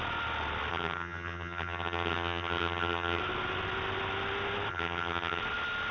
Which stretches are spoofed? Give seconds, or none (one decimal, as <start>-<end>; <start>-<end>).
0.7-3.2; 4.7-5.4